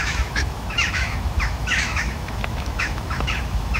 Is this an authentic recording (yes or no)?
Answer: no